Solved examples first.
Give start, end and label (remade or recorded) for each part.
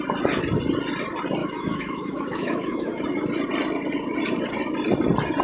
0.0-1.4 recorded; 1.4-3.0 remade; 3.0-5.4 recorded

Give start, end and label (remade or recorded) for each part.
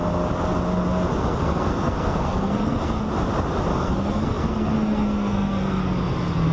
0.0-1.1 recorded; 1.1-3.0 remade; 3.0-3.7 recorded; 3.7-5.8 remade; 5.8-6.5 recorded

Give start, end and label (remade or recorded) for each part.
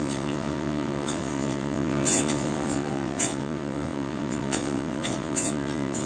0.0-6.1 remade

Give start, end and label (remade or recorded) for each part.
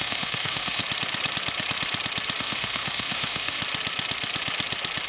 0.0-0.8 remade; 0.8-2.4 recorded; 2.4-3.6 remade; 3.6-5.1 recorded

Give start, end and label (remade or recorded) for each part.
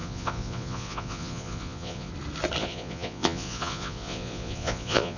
0.0-2.1 remade; 2.1-2.6 recorded; 2.6-5.2 remade